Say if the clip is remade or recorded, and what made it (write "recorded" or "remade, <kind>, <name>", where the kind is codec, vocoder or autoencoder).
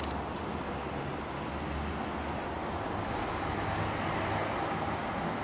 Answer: recorded